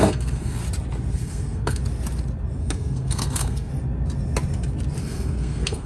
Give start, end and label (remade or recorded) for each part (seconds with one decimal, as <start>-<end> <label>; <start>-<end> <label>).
0.0-0.6 remade; 0.6-1.1 recorded; 1.1-1.8 remade; 1.8-2.6 recorded; 2.6-3.7 remade; 3.7-5.0 recorded; 5.0-5.9 remade